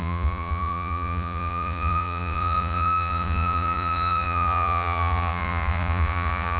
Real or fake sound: fake